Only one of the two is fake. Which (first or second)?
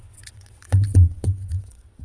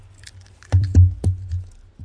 first